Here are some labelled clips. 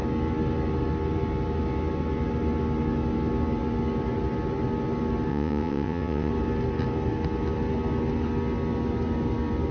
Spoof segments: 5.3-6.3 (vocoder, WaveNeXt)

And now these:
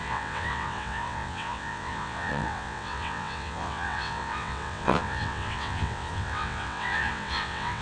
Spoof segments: 0.0-7.8 (vocoder, WaveNeXt)

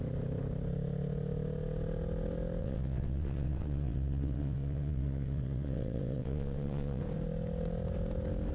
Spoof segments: 2.6-7.0 (vocoder, WaveNeXt)